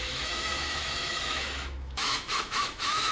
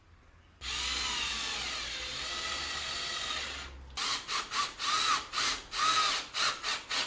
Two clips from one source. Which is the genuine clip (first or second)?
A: second